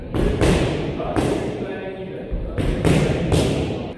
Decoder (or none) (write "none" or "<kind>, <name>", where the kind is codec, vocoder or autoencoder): none